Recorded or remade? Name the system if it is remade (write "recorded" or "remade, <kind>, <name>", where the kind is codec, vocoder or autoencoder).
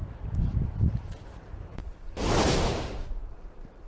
remade, vocoder, BigVGAN v2